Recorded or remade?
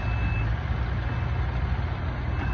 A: recorded